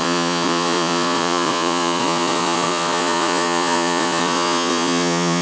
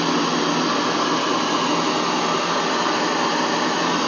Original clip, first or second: second